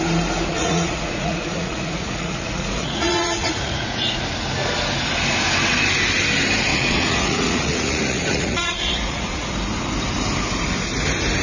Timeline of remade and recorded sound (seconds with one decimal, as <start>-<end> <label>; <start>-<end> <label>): 0.0-0.5 recorded; 0.5-4.2 remade; 4.2-6.7 recorded; 6.7-9.5 remade; 9.5-11.4 recorded